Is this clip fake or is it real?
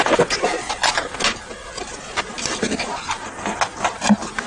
real